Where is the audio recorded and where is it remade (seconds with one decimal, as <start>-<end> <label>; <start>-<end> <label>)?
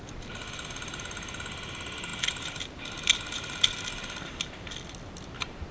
0.0-2.1 recorded; 2.1-3.9 remade; 3.9-5.7 recorded